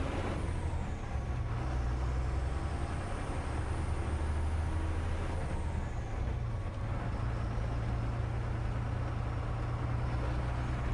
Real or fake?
real